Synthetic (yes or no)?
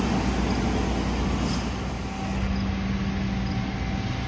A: no